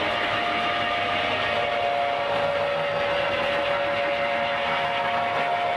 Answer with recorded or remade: recorded